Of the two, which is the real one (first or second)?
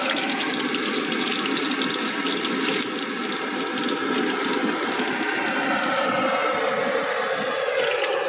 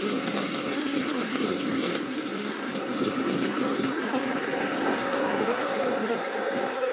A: first